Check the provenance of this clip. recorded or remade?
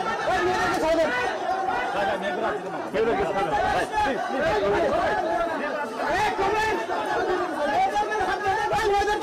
remade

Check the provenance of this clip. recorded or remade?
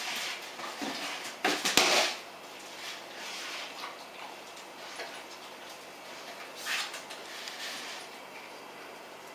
recorded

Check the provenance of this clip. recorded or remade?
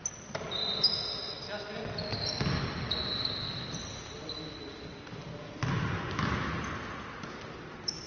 recorded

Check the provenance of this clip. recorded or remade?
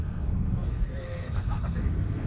remade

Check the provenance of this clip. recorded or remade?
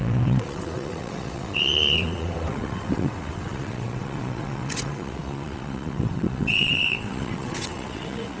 remade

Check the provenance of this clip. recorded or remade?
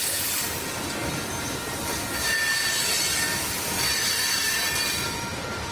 recorded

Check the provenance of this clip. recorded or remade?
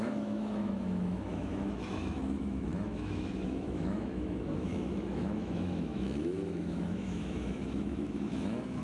remade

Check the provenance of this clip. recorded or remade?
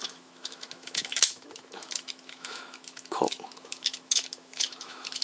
remade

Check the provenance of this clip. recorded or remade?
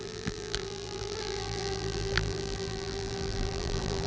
remade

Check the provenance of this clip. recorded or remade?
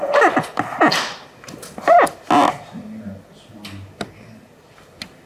recorded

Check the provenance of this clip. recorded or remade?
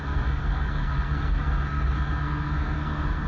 remade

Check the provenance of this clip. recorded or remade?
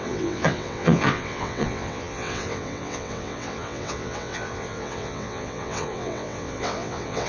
remade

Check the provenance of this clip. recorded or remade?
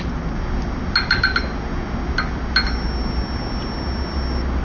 recorded